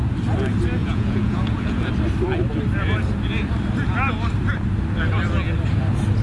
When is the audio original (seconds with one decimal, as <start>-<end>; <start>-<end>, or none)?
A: 0.0-0.8; 1.9-6.2